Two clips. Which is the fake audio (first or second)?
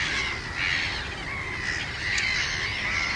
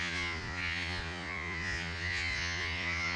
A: second